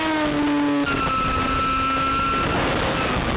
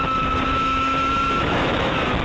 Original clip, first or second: first